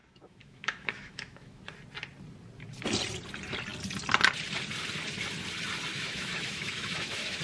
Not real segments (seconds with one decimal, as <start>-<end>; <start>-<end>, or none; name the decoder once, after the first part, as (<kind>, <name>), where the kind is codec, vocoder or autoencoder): 0.0-1.6 (autoencoder, DAC-VAE); 5.9-7.4